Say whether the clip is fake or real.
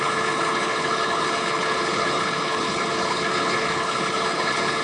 fake